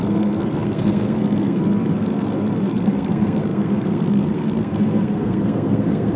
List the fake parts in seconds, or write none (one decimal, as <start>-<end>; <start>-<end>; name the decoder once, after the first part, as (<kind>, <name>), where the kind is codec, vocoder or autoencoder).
0.0-6.2 (codec, SNAC)

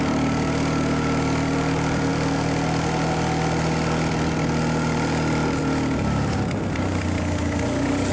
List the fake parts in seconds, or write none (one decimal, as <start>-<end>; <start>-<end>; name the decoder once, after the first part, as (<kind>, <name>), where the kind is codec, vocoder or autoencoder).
none

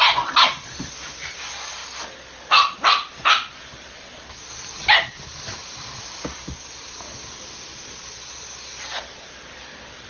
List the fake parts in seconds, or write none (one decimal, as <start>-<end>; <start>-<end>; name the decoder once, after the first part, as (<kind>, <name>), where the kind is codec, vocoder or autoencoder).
none

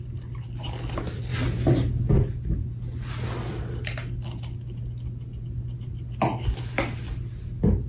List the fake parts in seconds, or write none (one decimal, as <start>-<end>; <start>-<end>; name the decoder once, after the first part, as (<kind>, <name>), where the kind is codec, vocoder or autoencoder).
none